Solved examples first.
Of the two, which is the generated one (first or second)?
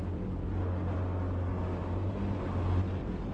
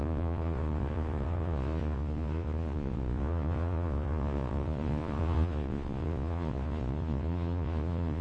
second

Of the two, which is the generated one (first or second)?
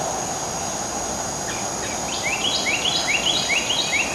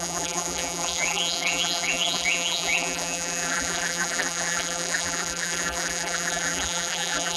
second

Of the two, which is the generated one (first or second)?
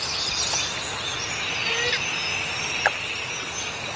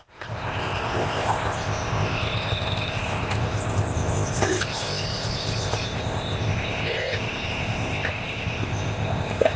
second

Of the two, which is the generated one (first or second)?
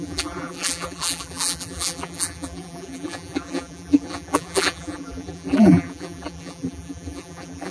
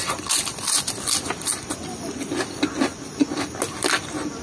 first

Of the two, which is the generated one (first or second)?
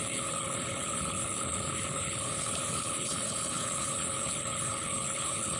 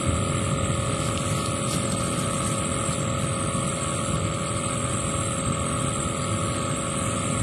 first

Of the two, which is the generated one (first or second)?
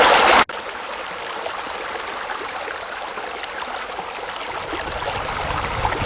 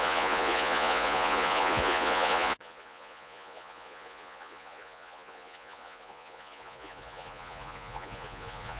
second